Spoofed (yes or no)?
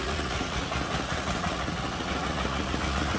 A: yes